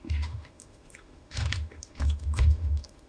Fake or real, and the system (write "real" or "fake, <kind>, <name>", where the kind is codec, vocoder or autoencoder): fake, autoencoder, DAC-VAE